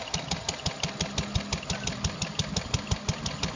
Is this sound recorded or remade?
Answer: recorded